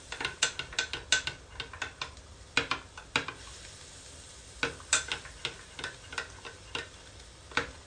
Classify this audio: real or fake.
real